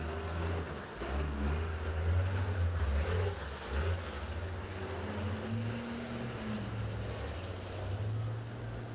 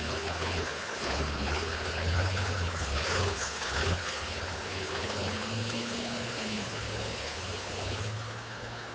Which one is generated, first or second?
second